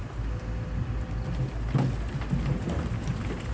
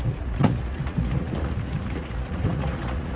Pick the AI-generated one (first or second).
second